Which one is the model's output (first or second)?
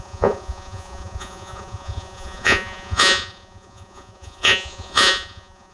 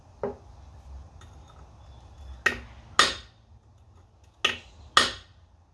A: first